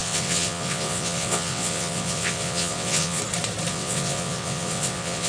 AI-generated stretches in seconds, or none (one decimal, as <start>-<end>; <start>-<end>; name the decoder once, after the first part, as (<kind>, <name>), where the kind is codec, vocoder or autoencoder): 0.0-3.2 (vocoder, WaveNeXt); 3.7-5.3